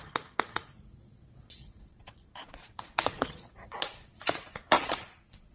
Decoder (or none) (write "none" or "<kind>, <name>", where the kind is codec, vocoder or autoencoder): vocoder, Vocos